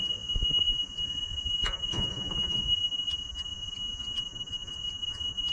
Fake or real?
fake